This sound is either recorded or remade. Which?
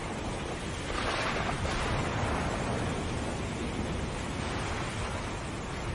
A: recorded